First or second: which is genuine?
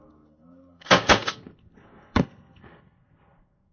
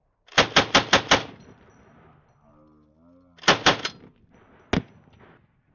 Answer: second